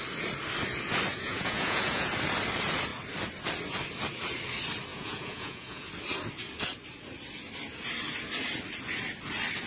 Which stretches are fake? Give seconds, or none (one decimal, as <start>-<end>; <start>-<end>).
1.1-2.1; 4.9-5.9